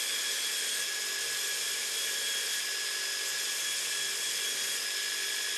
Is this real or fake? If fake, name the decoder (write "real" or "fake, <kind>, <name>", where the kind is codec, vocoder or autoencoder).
real